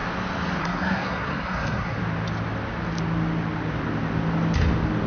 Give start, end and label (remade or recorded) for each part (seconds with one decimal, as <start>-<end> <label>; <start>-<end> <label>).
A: 0.0-0.6 recorded; 0.6-2.0 remade; 2.0-5.1 recorded